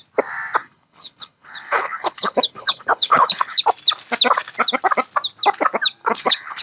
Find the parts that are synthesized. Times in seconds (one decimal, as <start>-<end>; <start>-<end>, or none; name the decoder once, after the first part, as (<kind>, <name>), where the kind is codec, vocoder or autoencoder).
0.6-3.6 (codec, HILCodec); 6.0-6.6